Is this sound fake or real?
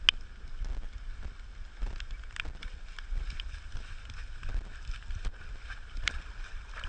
real